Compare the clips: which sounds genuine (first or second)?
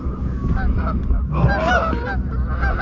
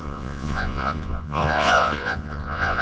first